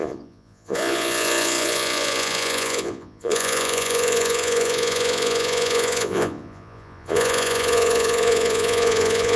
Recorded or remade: remade